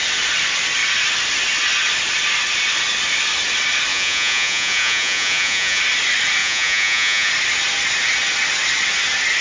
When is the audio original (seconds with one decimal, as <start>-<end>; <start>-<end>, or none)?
0.0-3.9; 5.8-6.4; 7.3-9.4